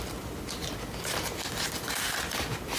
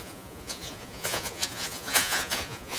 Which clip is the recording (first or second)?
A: first